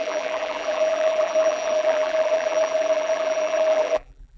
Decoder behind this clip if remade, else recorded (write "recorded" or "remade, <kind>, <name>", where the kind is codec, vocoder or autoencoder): remade, vocoder, BigVGAN v2